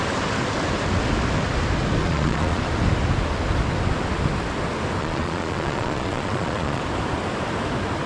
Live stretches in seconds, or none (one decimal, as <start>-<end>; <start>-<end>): 0.0-2.0; 2.6-5.0; 6.8-8.1